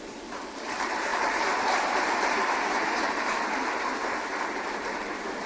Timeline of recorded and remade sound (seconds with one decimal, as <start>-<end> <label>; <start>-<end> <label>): 0.0-5.5 remade